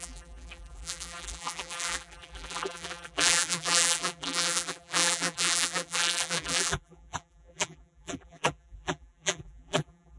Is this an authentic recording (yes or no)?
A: no